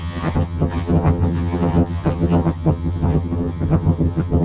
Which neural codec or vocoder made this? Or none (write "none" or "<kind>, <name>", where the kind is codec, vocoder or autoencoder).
vocoder, HiFi-GAN